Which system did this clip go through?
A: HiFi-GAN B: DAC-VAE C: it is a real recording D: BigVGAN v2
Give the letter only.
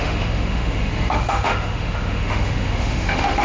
B